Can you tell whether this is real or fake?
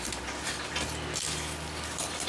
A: real